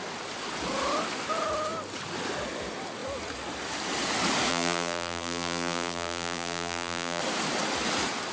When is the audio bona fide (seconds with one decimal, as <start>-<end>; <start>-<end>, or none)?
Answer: 0.0-4.5; 7.2-8.3

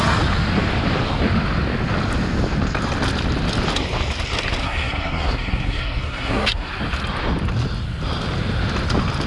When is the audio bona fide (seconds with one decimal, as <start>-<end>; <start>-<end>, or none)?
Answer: 0.0-4.6; 6.7-9.3

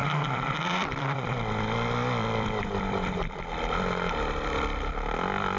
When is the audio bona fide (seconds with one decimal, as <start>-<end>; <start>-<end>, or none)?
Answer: 3.4-5.6

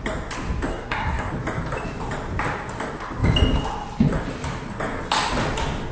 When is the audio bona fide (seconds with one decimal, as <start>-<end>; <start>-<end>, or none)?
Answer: 0.0-0.7; 1.3-5.9